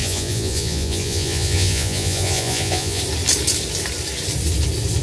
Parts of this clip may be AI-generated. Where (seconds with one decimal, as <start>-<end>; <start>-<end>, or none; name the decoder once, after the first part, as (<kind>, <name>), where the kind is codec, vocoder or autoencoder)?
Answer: 0.0-3.0 (vocoder, Vocos)